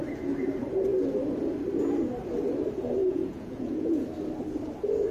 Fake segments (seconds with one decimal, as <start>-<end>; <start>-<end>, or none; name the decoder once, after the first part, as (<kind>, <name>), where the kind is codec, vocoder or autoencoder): 3.0-4.0 (vocoder, Vocos)